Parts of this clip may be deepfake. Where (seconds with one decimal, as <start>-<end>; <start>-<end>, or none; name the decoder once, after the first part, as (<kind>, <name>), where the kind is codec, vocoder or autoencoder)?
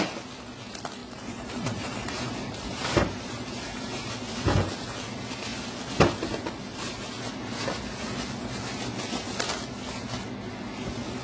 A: 1.0-4.1 (vocoder, BigVGAN v2)